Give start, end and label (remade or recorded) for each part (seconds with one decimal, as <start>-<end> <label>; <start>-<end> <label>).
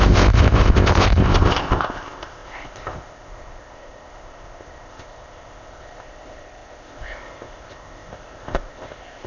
0.0-9.3 remade